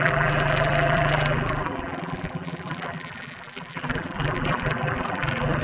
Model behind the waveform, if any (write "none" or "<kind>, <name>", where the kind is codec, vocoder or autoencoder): vocoder, BigVGAN v2